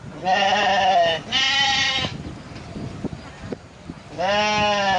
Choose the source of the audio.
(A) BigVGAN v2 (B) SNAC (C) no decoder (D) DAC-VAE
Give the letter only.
C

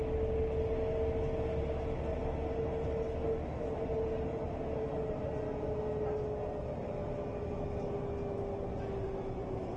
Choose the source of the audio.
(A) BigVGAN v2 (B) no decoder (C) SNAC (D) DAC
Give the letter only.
B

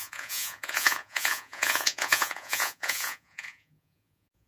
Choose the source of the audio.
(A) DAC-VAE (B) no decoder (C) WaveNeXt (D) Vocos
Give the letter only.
D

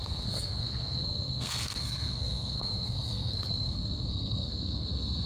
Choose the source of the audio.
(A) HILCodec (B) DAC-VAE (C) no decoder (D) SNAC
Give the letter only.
D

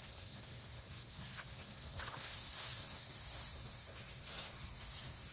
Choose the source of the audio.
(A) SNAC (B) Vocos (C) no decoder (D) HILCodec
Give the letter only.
A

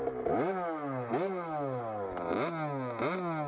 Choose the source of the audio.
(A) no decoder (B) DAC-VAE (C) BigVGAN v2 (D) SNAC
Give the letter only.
A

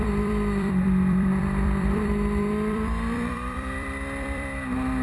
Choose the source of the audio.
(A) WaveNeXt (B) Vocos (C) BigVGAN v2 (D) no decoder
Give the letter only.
C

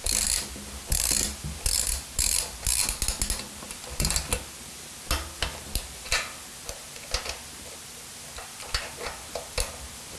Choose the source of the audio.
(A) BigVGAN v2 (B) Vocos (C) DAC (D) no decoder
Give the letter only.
D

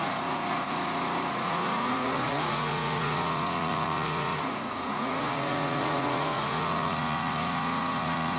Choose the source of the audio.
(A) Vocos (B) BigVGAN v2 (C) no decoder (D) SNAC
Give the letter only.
A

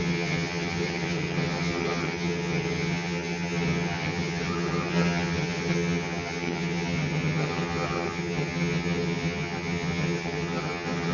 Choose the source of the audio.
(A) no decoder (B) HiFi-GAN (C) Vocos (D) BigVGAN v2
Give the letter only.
B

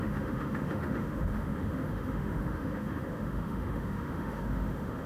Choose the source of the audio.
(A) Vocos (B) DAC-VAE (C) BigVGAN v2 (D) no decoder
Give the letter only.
B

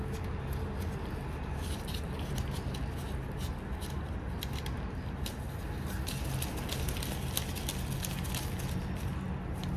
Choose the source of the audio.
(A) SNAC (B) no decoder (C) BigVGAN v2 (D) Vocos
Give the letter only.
B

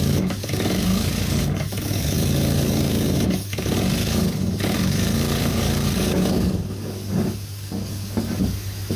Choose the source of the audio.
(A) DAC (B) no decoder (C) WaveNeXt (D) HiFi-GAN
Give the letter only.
A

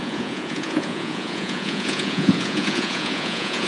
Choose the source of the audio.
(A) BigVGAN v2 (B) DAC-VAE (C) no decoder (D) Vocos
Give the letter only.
D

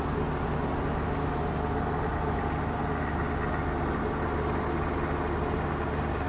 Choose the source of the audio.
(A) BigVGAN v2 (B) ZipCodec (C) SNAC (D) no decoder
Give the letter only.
D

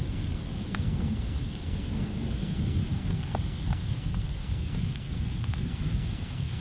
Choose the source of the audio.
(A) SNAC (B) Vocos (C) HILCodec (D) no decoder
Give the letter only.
A